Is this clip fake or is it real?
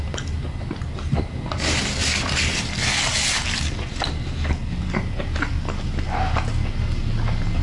real